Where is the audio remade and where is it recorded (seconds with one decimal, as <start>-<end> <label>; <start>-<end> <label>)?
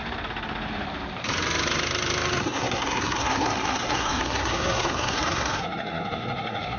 0.0-2.4 recorded; 2.4-6.8 remade